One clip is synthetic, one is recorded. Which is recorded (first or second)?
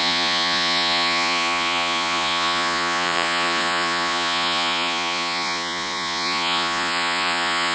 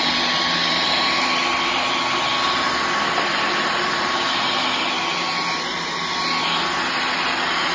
second